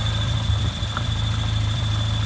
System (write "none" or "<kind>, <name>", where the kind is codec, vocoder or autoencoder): vocoder, BigVGAN v2